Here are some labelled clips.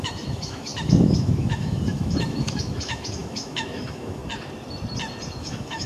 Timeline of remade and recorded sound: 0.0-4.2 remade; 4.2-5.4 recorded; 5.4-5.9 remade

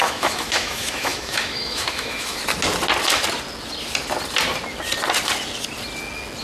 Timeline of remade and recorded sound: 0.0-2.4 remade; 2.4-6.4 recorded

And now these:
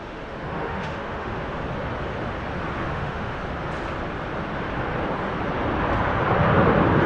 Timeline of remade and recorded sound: 0.0-1.6 remade; 1.6-2.9 recorded; 2.9-3.4 remade; 3.4-7.1 recorded